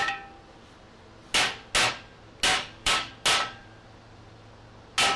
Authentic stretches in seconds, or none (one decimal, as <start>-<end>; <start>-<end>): 0.0-2.5; 3.1-5.2